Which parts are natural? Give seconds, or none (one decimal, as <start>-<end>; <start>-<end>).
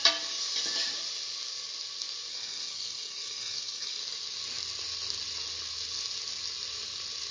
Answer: 0.0-2.3; 4.0-7.3